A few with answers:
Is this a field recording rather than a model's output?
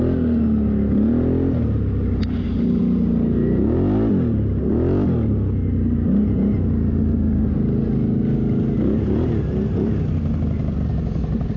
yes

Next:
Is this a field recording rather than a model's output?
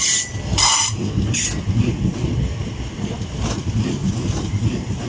yes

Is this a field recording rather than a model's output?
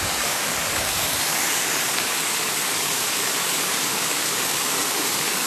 no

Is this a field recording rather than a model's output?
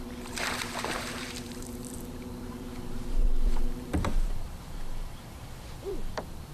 no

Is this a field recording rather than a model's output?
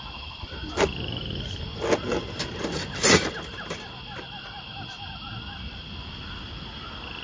no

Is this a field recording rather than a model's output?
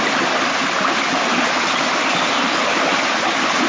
yes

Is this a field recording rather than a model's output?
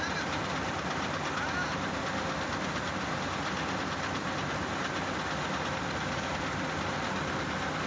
yes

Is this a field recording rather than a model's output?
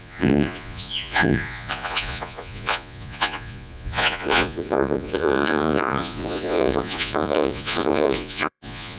no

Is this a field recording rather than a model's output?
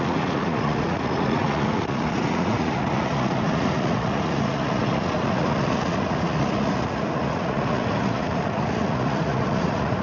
no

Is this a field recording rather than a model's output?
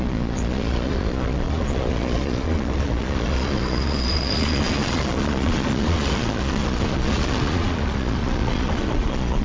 no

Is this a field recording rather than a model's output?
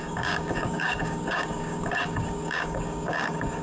no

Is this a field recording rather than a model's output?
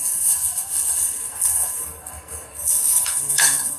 no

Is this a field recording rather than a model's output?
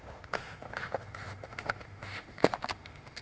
no